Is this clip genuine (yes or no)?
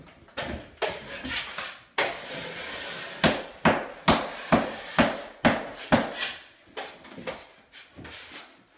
yes